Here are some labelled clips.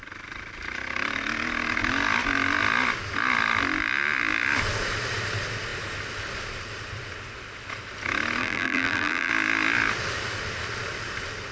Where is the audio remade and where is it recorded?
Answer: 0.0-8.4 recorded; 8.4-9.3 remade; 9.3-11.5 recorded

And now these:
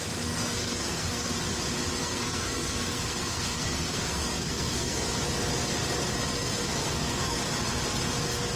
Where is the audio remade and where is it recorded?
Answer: 0.0-1.3 remade; 1.3-2.0 recorded; 2.0-5.0 remade; 5.0-6.3 recorded; 6.3-7.4 remade; 7.4-8.6 recorded

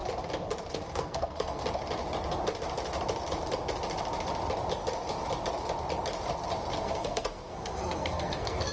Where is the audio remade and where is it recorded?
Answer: 0.0-0.7 recorded; 0.7-1.6 remade; 1.6-6.8 recorded; 6.8-8.7 remade

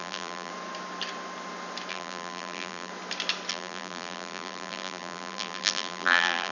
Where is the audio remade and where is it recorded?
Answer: 0.0-0.5 remade; 0.5-1.9 recorded; 1.9-2.9 remade; 2.9-3.5 recorded; 3.5-6.5 remade

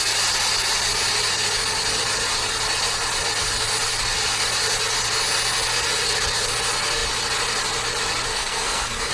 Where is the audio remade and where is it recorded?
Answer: 0.0-8.3 recorded; 8.3-9.1 remade